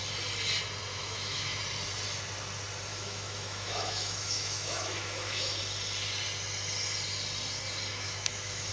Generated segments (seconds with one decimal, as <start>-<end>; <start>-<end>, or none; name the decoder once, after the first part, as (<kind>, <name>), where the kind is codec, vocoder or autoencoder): 0.9-1.6 (autoencoder, DAC-VAE); 2.9-5.6; 7.9-8.7